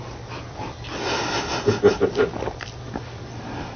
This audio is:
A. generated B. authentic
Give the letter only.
B